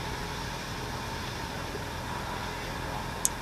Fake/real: real